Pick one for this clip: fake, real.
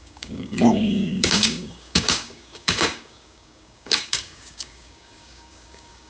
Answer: fake